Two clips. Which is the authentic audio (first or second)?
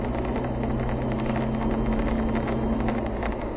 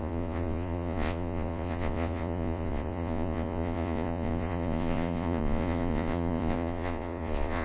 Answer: first